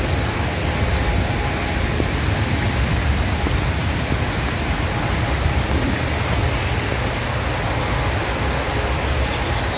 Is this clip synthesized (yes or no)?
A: no